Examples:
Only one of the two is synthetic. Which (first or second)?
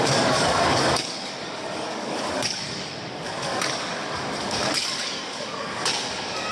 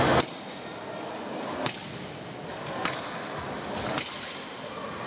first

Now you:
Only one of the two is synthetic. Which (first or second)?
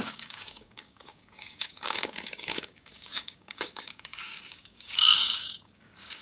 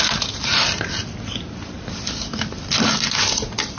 first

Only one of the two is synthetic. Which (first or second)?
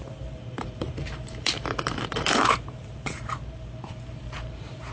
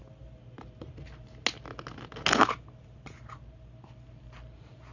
first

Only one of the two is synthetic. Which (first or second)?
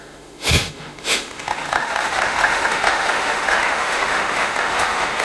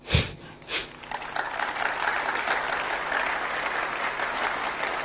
first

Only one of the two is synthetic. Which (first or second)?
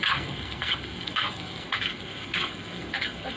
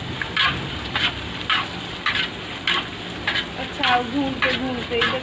first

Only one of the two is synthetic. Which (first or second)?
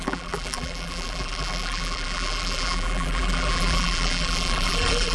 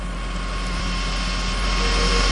first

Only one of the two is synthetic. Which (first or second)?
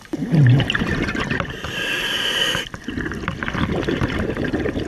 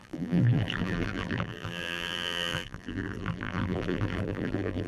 second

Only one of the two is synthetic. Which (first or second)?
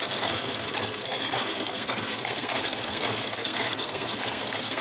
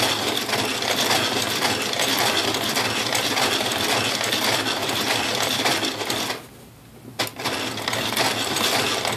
first